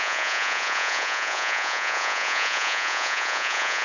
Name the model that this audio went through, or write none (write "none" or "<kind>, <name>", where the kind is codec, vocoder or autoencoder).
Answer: vocoder, Vocos